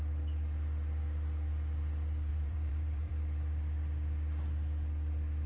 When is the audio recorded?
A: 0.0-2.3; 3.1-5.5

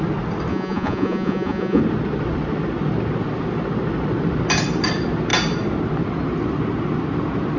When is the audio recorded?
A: 0.0-0.5; 1.8-7.6

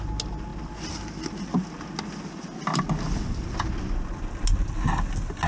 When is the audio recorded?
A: 0.0-5.5